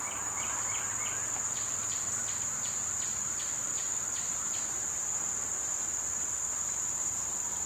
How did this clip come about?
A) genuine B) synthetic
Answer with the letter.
A